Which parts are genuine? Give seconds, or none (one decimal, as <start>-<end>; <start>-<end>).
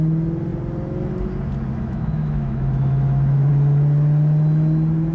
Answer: 0.0-1.7; 3.5-5.1